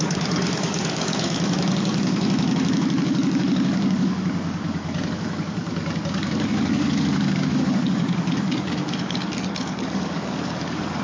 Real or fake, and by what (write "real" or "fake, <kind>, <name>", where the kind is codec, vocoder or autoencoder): fake, codec, DAC